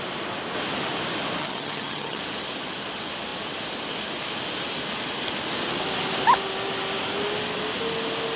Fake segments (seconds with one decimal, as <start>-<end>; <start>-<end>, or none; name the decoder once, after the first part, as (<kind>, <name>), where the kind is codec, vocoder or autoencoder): 1.4-2.2 (vocoder, HiFi-GAN)